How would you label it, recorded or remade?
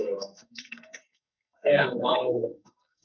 remade